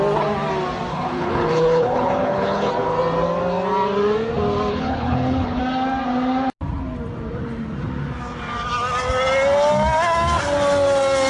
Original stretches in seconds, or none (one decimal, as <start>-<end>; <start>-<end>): 0.0-0.9; 2.7-4.7; 5.6-11.3